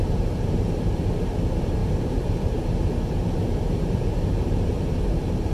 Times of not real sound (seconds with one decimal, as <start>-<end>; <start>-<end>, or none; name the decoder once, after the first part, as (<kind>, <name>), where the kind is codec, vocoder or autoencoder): 0.0-5.5 (vocoder, BigVGAN v2)